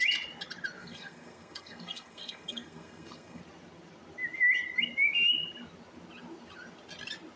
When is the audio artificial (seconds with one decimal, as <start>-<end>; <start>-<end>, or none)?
0.8-3.4